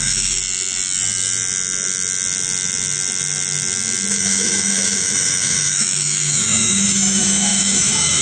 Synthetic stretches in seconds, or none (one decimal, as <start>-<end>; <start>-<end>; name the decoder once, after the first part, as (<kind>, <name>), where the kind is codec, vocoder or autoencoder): 0.0-0.4 (autoencoder, DAC-VAE); 4.1-8.2

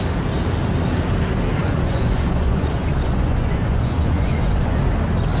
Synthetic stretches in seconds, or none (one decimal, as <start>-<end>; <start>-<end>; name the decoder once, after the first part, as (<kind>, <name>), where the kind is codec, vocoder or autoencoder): 1.6-4.8 (vocoder, Vocos)